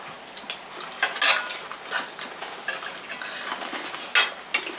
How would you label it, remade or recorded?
recorded